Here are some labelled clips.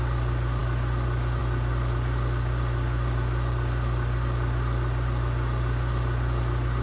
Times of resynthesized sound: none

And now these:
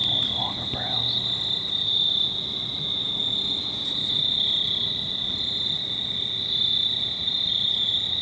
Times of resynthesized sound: 0.0-1.7

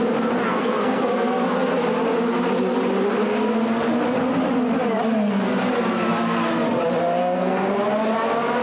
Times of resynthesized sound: 0.5-1.0; 7.2-7.7